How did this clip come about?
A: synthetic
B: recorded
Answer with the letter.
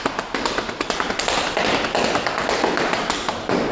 B